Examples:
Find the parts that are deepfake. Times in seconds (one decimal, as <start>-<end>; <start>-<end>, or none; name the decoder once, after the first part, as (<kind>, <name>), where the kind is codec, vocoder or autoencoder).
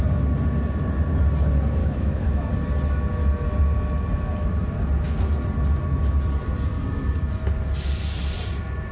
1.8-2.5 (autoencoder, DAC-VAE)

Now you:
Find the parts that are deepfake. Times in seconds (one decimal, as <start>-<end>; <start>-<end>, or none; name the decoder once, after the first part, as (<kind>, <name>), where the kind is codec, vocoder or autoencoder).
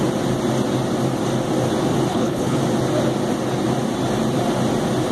2.1-2.6 (codec, HILCodec)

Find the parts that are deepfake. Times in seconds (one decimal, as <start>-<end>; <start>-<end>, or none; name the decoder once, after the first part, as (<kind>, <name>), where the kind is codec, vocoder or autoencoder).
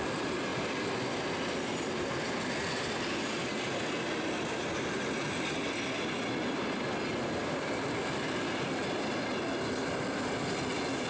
7.4-8.2 (vocoder, BigVGAN v2)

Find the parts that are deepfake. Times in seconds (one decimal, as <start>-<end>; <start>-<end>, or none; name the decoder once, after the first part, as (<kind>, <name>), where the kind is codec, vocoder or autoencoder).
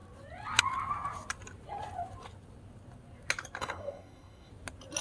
3.6-4.5 (codec, SNAC)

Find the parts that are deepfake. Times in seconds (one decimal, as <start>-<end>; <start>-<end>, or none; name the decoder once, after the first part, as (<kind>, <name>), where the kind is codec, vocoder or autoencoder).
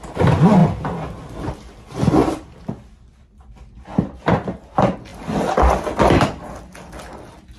none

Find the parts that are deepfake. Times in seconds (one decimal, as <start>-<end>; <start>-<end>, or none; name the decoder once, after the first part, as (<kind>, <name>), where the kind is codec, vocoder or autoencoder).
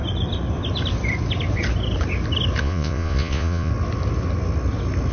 2.6-3.7 (vocoder, Vocos)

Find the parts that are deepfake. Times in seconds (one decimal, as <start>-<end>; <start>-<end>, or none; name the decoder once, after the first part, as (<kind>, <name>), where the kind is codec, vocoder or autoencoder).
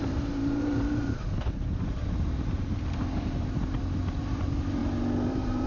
0.0-1.2 (vocoder, BigVGAN v2); 1.9-4.8; 5.3-5.7